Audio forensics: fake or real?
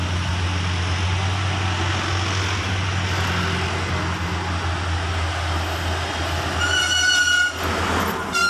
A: real